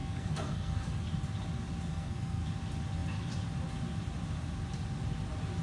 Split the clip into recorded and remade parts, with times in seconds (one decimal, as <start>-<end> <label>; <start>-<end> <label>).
0.0-1.1 remade; 1.1-1.9 recorded; 1.9-2.4 remade; 2.4-5.6 recorded